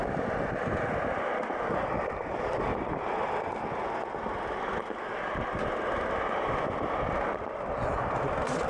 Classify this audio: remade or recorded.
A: recorded